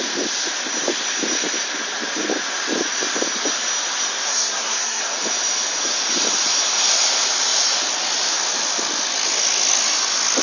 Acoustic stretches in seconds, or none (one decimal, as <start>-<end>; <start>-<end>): 0.0-4.3; 5.0-10.4